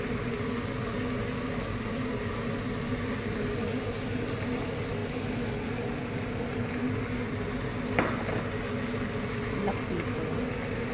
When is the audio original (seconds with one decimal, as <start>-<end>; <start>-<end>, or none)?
0.0-10.9